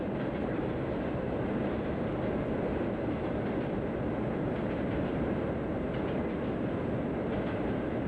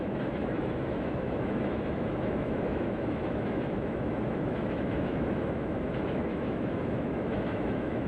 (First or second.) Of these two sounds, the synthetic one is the second